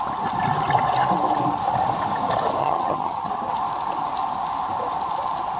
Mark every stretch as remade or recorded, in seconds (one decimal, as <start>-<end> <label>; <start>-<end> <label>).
0.0-2.6 recorded; 2.6-3.3 remade; 3.3-5.6 recorded